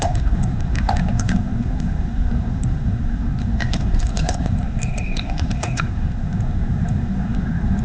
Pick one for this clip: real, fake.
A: fake